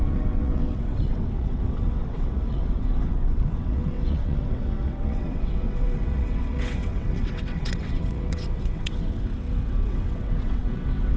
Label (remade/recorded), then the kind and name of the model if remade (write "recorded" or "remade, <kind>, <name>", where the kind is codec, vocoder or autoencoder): remade, vocoder, WaveNeXt